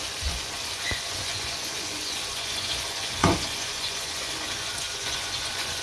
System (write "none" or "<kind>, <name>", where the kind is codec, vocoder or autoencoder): vocoder, Vocos